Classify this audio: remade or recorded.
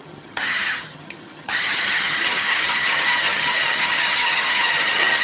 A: remade